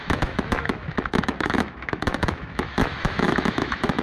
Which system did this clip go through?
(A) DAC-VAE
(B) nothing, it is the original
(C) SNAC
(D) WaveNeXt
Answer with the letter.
A